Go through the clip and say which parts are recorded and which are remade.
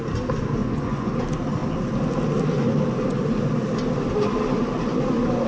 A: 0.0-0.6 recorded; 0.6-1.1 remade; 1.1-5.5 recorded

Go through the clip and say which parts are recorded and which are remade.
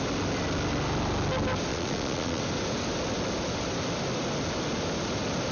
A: 0.0-1.7 recorded; 1.7-2.4 remade; 2.4-5.5 recorded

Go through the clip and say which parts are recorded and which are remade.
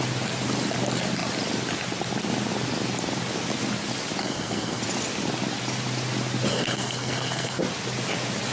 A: 0.0-4.2 recorded; 4.2-4.8 remade; 4.8-6.5 recorded; 6.5-7.6 remade; 7.6-8.5 recorded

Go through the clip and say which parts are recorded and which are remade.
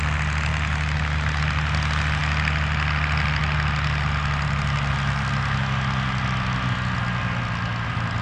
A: 0.0-8.2 recorded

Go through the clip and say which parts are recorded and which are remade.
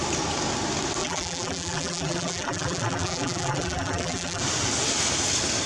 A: 0.0-1.0 recorded; 1.0-4.4 remade; 4.4-5.7 recorded